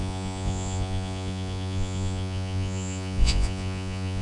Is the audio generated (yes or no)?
yes